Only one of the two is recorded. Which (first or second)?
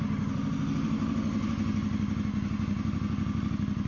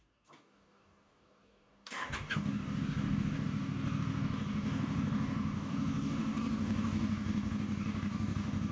first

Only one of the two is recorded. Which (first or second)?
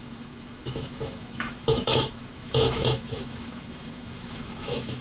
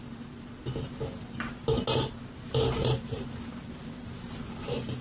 second